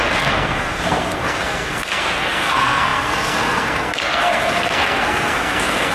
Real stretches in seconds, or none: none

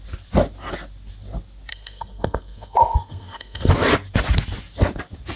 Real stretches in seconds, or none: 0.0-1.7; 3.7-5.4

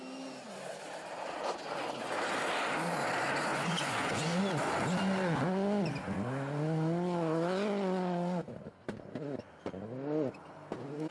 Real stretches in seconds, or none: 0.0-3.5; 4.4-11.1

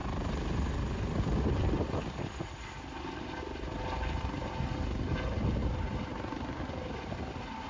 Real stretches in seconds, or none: 0.0-7.7